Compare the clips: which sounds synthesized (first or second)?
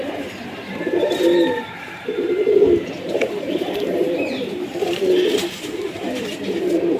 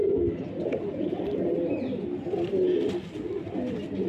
first